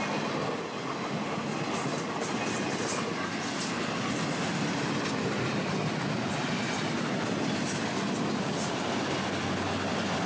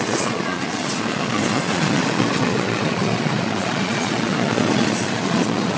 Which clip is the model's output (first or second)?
second